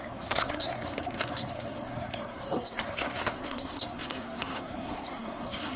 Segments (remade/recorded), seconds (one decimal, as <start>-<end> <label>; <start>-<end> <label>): 0.0-5.8 remade